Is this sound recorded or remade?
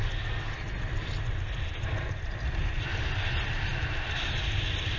remade